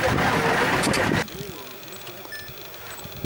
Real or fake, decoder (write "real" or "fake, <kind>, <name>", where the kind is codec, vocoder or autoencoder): real